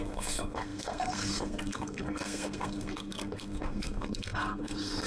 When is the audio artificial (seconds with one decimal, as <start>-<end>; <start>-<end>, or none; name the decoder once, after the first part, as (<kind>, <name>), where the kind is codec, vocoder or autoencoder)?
0.0-5.1 (codec, SNAC)